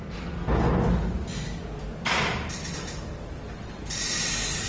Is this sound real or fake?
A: real